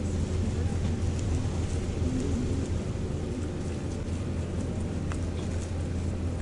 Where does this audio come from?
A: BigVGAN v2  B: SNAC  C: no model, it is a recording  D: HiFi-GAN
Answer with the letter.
C